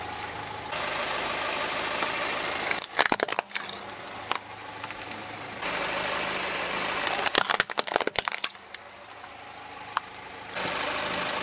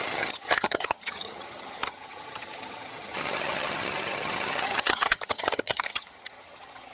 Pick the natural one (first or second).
first